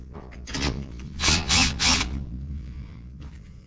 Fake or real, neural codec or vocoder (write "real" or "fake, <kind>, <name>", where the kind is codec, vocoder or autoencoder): fake, vocoder, Vocos